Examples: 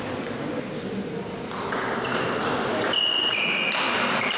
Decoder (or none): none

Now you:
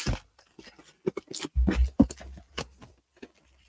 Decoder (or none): none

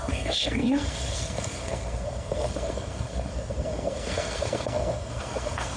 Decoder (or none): codec, SNAC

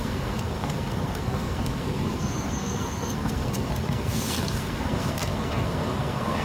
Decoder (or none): codec, SNAC